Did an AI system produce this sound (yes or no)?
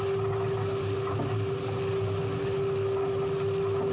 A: no